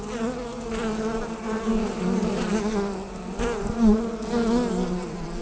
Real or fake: real